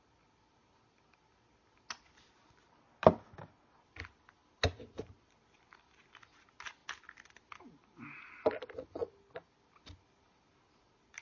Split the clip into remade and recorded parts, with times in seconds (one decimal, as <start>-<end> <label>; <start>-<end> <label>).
0.0-11.2 recorded